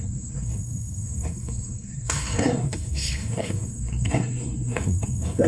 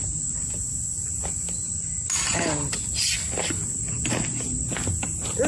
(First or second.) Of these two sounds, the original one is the second